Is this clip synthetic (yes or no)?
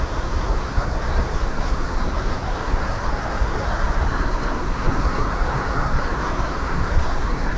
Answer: yes